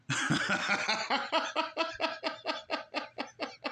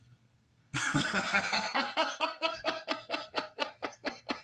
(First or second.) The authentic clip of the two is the first